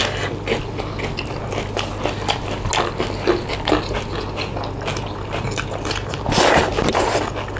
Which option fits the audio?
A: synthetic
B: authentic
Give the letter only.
B